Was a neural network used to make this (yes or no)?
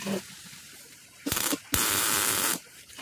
yes